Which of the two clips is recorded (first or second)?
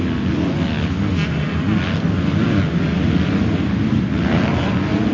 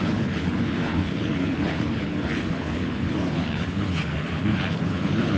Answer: first